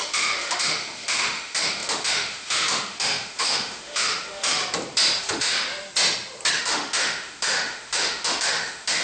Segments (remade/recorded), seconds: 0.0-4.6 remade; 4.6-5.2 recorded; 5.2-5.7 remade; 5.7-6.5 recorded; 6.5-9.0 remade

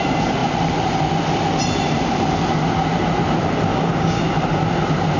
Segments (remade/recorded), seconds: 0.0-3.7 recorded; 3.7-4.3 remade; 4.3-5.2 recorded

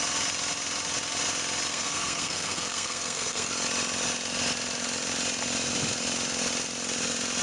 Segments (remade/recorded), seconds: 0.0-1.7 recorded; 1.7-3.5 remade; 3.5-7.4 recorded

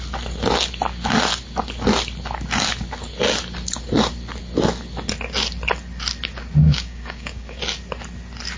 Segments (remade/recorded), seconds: 0.0-6.6 recorded; 6.6-7.6 remade; 7.6-8.6 recorded

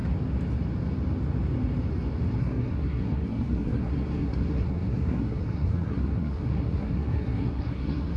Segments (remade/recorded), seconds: 0.0-2.4 recorded; 2.4-8.2 remade

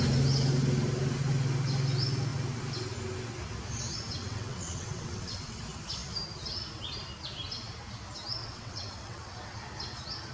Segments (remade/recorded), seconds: 0.0-4.2 recorded; 4.2-5.6 remade; 5.6-8.4 recorded; 8.4-9.6 remade; 9.6-10.3 recorded